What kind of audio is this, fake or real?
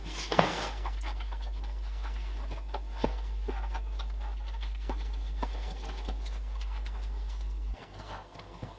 fake